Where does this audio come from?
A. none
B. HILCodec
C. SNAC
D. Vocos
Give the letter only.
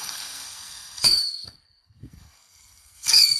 C